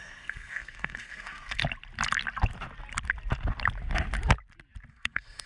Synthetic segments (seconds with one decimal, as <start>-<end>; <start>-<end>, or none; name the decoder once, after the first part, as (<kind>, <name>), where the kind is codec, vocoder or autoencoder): 0.0-1.6 (codec, SNAC); 4.9-5.5